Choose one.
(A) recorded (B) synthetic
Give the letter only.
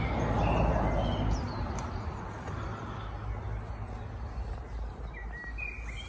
A